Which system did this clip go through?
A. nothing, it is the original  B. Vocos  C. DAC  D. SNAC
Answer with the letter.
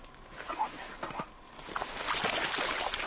A